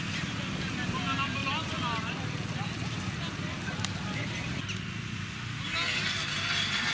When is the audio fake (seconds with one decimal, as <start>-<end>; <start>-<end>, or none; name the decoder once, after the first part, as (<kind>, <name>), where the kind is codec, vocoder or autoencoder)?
none